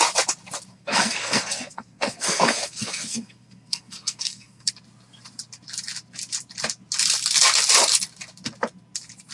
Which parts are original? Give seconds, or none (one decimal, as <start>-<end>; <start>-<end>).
0.0-0.7; 4.7-9.3